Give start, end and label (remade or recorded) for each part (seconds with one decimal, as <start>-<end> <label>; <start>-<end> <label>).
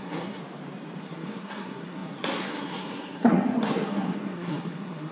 0.0-0.4 remade; 0.4-1.0 recorded; 1.0-5.1 remade